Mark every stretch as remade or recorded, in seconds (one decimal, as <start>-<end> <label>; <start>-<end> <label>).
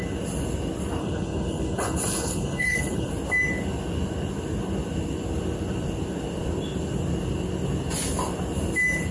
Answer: 0.0-1.0 recorded; 1.0-3.1 remade; 3.1-9.1 recorded